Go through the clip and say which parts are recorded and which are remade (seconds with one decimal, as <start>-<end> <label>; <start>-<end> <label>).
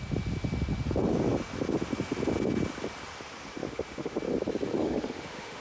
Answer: 0.0-3.5 recorded; 3.5-4.2 remade; 4.2-4.8 recorded; 4.8-5.6 remade